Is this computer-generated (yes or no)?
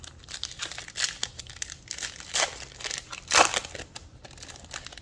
no